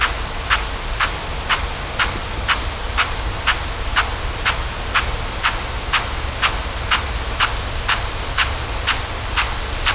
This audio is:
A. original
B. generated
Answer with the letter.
A